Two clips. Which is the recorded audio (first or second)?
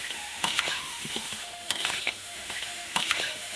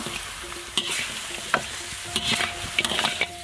second